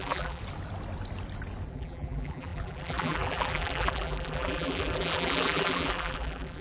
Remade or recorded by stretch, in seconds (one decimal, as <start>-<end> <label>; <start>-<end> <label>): 0.0-0.4 remade; 0.4-1.7 recorded; 1.7-6.6 remade